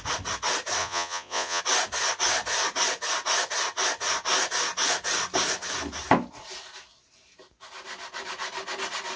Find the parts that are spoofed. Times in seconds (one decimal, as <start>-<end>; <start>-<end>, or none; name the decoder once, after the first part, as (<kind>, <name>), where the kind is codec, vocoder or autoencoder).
0.8-1.6 (vocoder, Vocos)